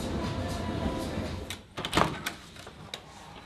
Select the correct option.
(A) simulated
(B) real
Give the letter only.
B